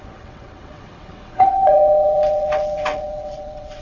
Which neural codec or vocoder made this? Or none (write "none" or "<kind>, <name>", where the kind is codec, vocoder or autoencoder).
vocoder, WaveNeXt